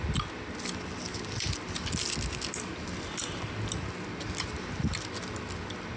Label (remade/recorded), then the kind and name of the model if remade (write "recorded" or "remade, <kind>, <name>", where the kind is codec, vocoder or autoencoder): recorded